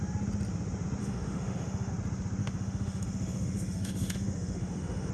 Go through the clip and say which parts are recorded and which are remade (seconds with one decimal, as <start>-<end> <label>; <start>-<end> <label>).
0.0-1.0 recorded; 1.0-1.9 remade; 1.9-2.4 recorded; 2.4-5.1 remade